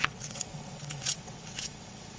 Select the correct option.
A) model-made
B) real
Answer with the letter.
A